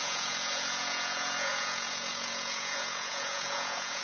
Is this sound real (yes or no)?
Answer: no